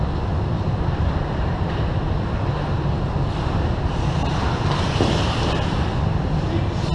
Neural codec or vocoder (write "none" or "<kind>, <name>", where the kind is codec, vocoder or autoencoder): none